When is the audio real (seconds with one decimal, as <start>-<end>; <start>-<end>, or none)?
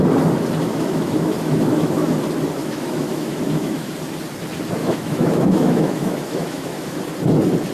0.0-0.6; 2.1-2.6; 3.9-4.8; 7.0-7.7